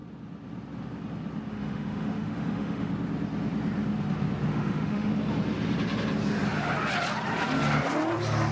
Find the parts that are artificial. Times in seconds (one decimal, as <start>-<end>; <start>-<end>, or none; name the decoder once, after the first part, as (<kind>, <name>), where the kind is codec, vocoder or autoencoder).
1.5-2.9 (autoencoder, DAC-VAE); 4.5-5.1